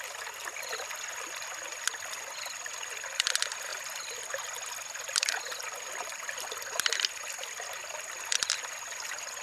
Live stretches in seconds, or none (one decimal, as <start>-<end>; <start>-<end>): 0.0-9.4